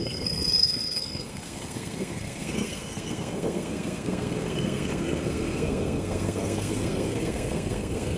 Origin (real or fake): fake